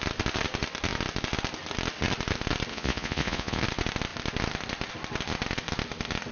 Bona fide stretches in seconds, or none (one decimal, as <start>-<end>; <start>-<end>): 0.0-2.7; 3.6-6.3